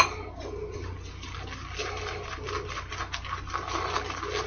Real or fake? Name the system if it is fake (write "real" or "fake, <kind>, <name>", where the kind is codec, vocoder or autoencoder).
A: real